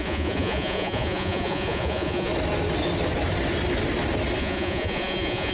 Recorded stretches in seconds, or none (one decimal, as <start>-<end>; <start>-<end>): 2.3-4.4